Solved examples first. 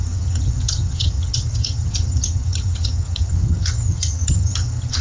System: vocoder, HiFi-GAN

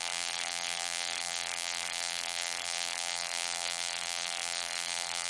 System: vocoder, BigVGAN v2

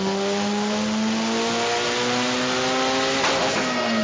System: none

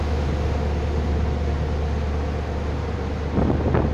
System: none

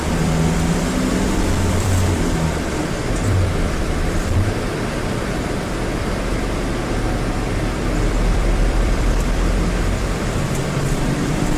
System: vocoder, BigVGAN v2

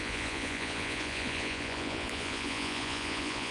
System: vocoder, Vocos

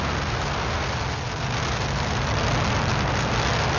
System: none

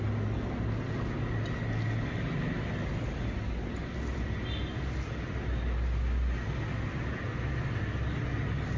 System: none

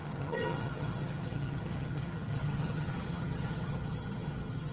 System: vocoder, HiFi-GAN